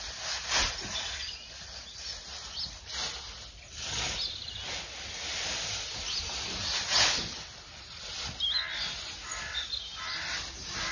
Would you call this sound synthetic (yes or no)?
no